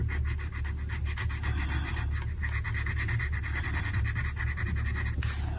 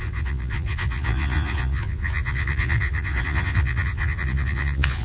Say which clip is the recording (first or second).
first